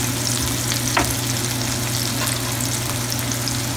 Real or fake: real